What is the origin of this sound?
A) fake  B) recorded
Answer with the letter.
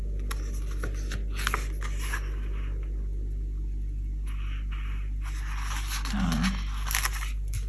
B